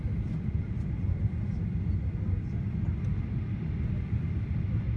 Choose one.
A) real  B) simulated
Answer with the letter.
A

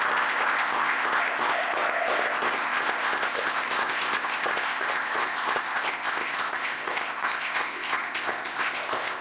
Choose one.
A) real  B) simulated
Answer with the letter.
B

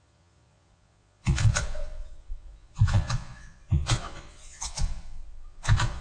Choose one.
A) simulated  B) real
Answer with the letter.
A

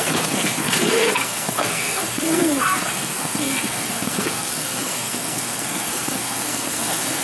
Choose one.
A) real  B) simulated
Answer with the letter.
B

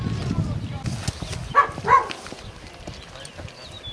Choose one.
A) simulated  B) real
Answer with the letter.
B